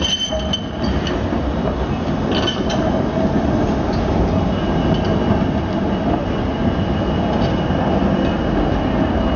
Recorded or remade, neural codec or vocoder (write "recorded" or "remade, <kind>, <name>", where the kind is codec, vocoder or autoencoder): recorded